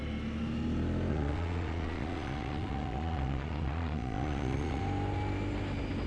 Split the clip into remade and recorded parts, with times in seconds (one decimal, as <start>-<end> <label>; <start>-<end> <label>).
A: 0.0-1.1 recorded; 1.1-4.8 remade; 4.8-6.1 recorded